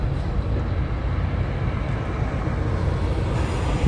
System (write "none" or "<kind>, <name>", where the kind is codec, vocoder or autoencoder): none